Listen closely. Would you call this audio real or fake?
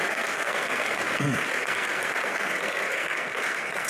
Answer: fake